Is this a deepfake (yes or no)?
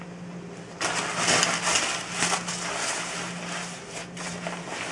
no